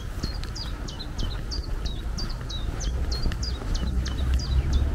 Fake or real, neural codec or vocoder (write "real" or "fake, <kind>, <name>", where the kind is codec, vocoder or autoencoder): real